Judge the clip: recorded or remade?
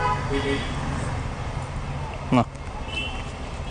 recorded